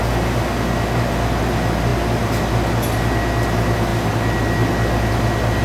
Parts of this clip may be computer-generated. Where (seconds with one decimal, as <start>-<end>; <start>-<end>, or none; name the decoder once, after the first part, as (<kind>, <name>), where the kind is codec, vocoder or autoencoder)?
none